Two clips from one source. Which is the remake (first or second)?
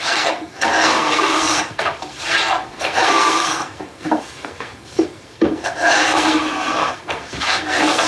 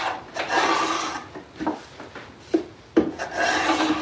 first